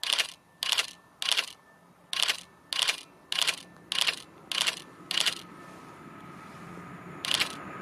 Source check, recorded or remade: recorded